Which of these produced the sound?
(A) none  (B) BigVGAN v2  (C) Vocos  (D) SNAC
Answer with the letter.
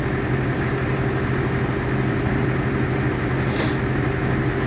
A